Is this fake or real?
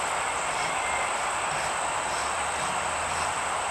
fake